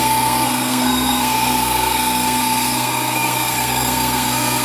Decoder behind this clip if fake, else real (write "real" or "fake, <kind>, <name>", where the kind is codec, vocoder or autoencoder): fake, codec, SNAC